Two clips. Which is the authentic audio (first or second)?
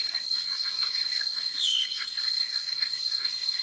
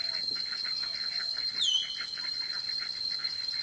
second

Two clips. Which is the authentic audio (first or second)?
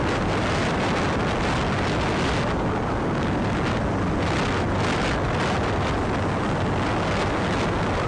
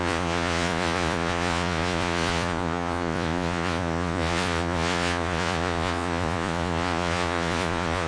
first